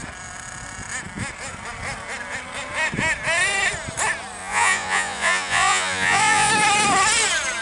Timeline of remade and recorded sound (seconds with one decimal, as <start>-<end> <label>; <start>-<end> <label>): 0.0-4.4 recorded; 4.4-6.5 remade; 6.5-7.6 recorded

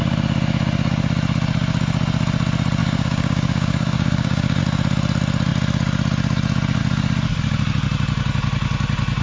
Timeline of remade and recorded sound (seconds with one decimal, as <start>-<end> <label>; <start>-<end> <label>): 0.0-2.8 recorded; 2.8-4.6 remade; 4.6-9.2 recorded